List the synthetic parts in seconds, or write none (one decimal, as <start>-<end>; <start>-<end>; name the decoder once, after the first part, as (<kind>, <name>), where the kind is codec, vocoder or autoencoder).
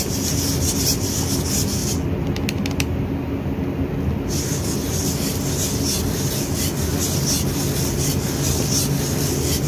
none